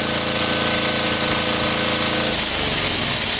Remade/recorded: recorded